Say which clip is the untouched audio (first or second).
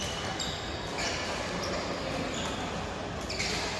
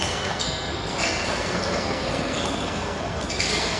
first